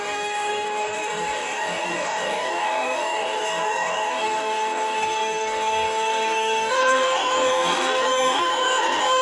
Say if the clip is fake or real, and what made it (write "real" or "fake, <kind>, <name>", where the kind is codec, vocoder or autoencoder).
fake, codec, DAC